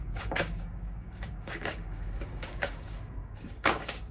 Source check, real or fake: fake